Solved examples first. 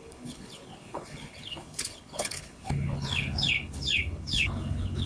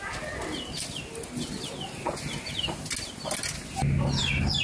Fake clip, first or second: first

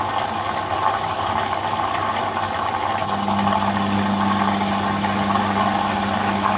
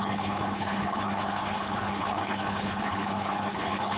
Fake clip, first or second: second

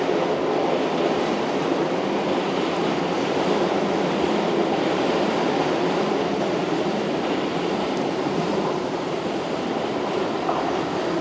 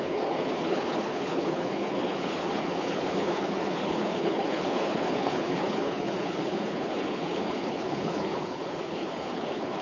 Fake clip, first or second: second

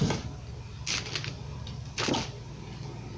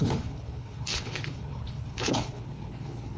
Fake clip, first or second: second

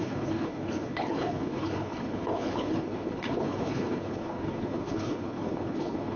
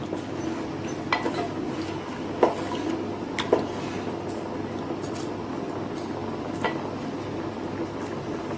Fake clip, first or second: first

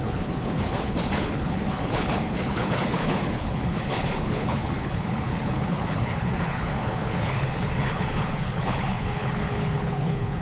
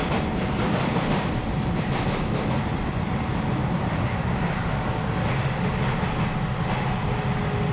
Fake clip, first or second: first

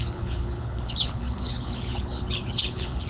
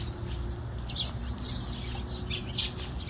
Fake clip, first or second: first